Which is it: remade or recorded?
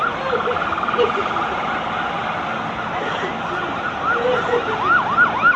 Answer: recorded